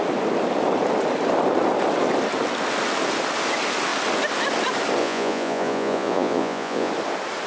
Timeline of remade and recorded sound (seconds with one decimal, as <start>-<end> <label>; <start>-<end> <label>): 0.0-5.0 recorded; 5.0-6.9 remade; 6.9-7.5 recorded